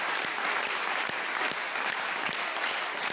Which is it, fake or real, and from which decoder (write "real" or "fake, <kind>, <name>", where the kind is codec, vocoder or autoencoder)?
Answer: real